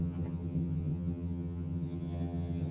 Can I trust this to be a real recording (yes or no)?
no